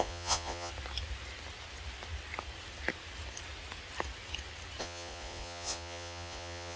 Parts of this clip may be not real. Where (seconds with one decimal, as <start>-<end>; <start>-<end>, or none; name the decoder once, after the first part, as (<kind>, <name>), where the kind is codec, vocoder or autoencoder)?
0.0-0.7 (vocoder, Vocos); 4.8-6.8